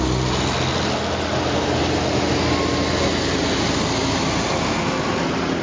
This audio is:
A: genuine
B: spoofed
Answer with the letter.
A